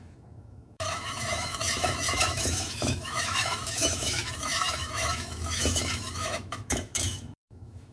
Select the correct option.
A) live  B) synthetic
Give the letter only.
B